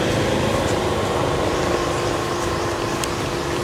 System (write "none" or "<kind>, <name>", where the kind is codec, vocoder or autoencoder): none